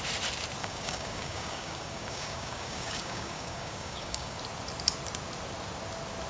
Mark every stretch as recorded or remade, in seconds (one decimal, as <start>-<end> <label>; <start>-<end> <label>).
0.0-0.6 recorded; 0.6-4.4 remade; 4.4-6.3 recorded